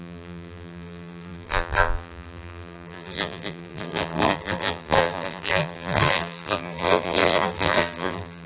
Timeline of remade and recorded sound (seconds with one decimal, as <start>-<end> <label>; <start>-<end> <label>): 0.0-8.5 remade